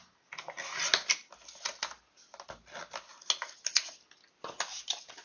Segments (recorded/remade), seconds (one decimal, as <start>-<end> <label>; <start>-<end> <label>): 0.0-5.2 recorded